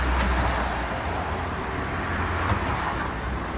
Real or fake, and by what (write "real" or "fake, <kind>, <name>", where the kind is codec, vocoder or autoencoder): real